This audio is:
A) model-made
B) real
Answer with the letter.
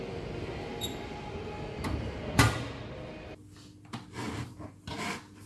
B